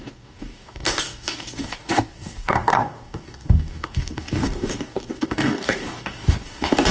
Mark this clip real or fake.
fake